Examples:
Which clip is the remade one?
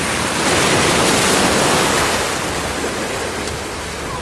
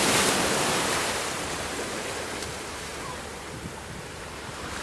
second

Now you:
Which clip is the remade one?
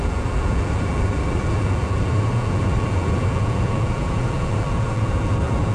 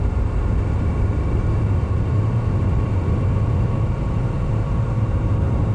first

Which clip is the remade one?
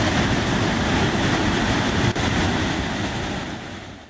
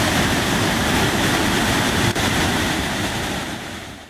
second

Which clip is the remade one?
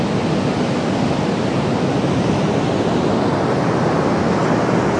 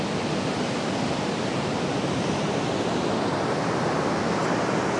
second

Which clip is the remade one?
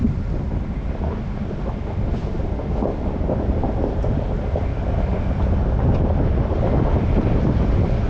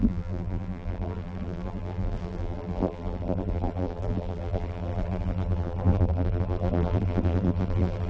second